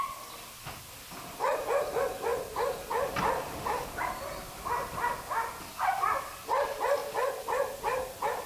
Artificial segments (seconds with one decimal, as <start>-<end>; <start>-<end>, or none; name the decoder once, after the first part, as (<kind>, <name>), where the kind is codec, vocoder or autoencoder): none